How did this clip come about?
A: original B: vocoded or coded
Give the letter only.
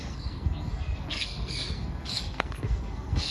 B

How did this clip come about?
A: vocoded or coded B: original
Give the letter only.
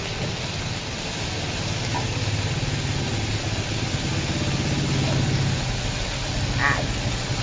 B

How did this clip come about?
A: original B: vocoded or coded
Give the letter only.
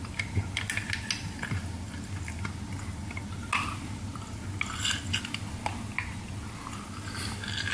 A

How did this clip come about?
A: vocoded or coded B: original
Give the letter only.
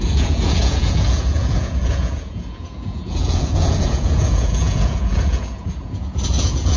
A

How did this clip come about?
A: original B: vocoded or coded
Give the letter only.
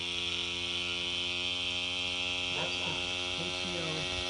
A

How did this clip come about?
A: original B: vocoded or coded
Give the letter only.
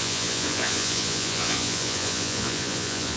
B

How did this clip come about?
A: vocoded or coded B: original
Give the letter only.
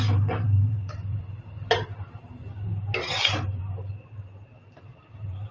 A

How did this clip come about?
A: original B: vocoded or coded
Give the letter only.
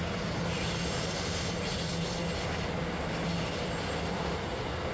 A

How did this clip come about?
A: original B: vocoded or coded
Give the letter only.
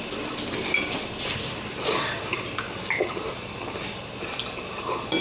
A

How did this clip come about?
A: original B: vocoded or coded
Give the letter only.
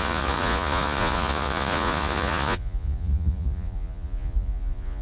B